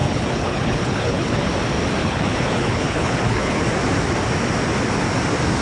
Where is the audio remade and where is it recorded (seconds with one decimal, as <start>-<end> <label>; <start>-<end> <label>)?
0.0-1.4 remade; 1.4-2.0 recorded; 2.0-3.6 remade; 3.6-5.6 recorded